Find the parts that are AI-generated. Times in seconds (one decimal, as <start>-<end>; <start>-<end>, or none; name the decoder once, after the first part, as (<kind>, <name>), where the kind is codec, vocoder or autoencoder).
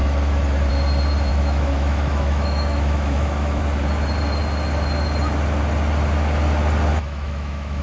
1.3-3.6 (autoencoder, DAC-VAE); 6.9-7.8